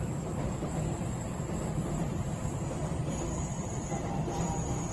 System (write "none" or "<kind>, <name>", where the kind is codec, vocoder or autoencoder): vocoder, BigVGAN v2